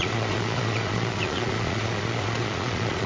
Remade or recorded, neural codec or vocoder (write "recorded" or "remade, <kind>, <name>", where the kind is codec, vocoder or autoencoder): remade, vocoder, Vocos